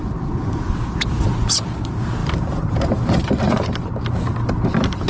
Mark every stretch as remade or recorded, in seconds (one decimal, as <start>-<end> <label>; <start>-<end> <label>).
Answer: 0.0-2.2 recorded; 2.2-4.0 remade; 4.0-5.1 recorded